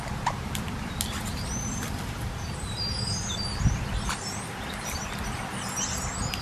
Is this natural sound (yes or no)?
yes